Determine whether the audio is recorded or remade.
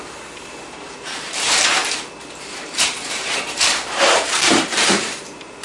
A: remade